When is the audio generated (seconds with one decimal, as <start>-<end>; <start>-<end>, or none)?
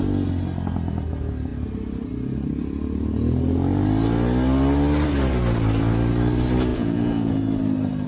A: 6.7-7.3